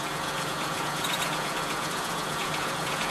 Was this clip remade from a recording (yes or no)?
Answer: yes